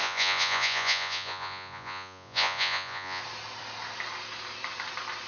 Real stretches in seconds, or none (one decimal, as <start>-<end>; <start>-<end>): 3.2-5.3